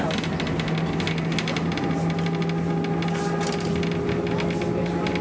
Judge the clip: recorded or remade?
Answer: recorded